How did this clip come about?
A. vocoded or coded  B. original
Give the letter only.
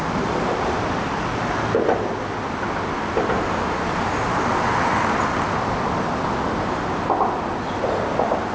B